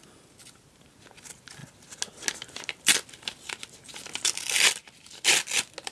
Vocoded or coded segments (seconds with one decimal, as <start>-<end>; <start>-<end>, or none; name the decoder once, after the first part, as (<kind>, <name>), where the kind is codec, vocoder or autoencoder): none